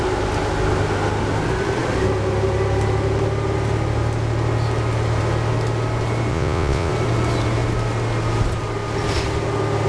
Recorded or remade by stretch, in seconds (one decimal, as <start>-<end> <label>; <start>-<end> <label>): 0.0-6.3 recorded; 6.3-6.9 remade; 6.9-9.9 recorded